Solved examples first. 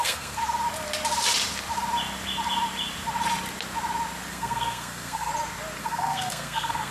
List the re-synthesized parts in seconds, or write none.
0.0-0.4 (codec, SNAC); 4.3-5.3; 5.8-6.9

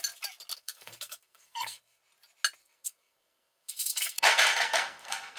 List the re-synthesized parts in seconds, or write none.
0.5-2.0 (codec, SNAC); 2.6-5.4

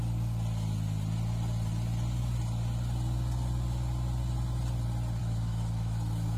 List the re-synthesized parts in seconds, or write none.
5.2-6.4 (autoencoder, DAC-VAE)

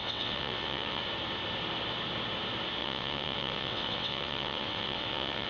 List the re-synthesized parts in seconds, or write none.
0.0-1.0 (vocoder, WaveNeXt); 2.8-5.5